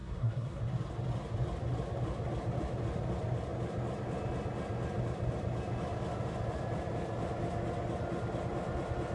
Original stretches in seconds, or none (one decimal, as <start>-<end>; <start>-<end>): 0.6-9.1